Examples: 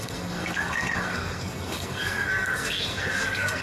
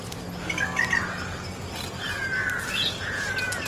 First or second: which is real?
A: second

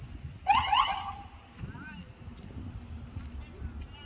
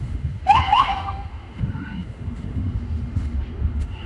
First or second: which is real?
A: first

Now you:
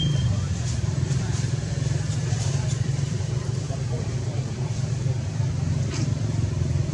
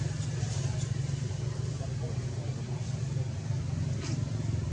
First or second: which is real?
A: second